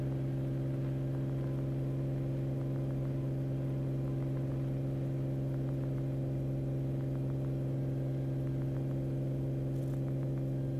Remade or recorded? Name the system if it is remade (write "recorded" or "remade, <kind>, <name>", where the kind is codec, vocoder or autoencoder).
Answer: recorded